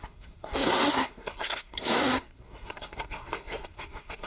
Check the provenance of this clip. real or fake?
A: fake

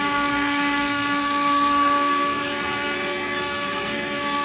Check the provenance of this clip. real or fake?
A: fake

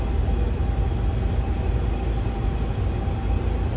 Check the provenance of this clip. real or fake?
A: real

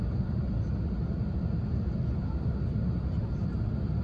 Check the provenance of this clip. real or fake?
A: real